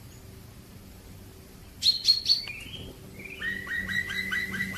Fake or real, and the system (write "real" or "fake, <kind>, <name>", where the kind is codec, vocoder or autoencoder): real